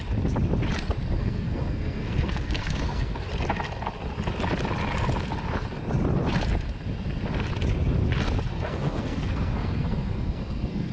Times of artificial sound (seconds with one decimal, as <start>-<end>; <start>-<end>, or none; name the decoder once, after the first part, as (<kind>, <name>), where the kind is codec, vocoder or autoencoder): 1.2-3.3 (codec, SNAC); 8.5-10.9